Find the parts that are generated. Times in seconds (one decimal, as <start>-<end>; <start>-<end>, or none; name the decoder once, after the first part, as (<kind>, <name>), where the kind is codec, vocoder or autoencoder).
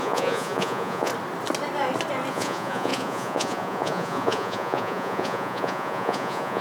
0.0-1.1 (vocoder, Vocos); 2.3-6.6